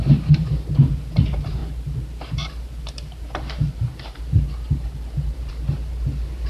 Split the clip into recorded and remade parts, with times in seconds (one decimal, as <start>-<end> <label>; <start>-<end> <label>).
0.0-6.5 remade